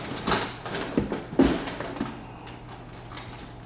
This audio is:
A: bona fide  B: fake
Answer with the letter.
A